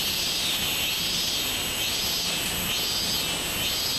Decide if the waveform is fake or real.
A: real